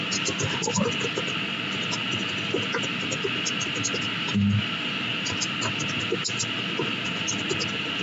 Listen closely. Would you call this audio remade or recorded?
recorded